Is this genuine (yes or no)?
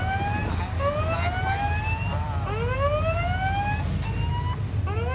yes